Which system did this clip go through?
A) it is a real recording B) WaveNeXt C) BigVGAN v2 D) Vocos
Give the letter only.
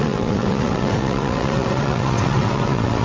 B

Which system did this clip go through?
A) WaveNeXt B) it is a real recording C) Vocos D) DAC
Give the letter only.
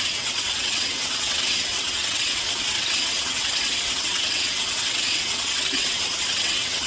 A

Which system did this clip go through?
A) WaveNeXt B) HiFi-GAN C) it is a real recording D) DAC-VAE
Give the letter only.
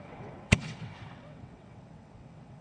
A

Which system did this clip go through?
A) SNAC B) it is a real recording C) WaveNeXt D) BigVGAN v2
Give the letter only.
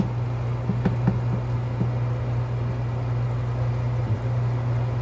B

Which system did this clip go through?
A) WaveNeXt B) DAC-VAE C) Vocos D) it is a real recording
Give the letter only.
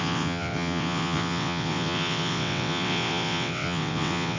A